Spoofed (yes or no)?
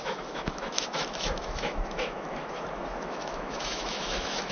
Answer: yes